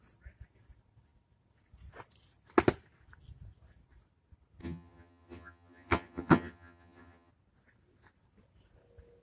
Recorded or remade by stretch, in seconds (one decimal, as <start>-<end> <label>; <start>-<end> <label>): 0.0-4.6 recorded; 4.6-7.3 remade; 7.3-9.2 recorded